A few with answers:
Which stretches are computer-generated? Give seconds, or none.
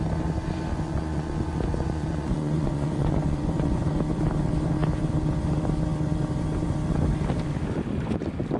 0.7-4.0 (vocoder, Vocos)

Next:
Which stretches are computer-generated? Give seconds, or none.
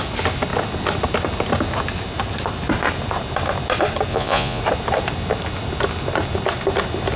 4.1-4.6 (vocoder, Vocos)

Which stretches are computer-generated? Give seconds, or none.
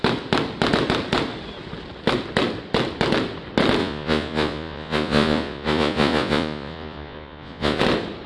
3.8-7.8 (vocoder, Vocos)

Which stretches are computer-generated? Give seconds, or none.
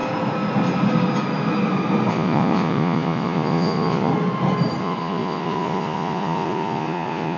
2.1-4.1 (vocoder, Vocos); 4.8-7.4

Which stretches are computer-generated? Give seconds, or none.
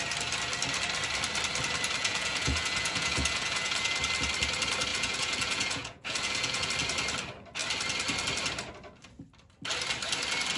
2.0-4.0 (vocoder, Vocos); 4.9-6.7